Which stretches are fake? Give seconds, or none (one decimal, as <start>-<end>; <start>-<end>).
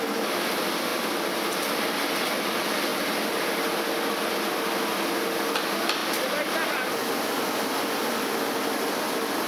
0.9-1.6; 6.0-6.7